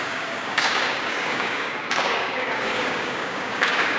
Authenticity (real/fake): fake